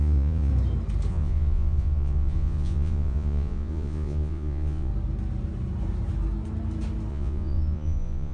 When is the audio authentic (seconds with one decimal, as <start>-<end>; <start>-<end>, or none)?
0.5-1.1; 4.9-7.1